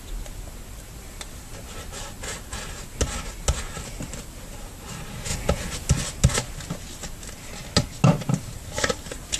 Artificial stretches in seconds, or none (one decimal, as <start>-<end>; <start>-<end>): none